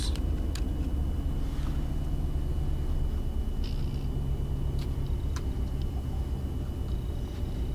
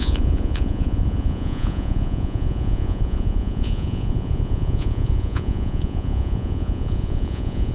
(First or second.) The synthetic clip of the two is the second